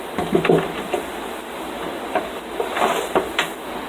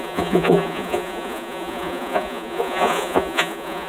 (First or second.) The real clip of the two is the first